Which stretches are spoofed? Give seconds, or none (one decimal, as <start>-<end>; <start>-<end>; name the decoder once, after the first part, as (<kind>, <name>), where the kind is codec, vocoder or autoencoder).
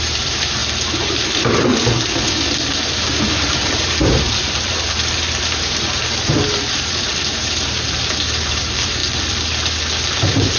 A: 0.0-1.7 (vocoder, BigVGAN v2); 3.1-9.0